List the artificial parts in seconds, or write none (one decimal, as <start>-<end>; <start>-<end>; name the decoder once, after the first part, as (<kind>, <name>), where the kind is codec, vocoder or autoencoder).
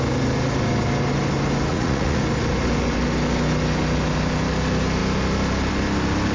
1.7-2.2 (vocoder, Vocos)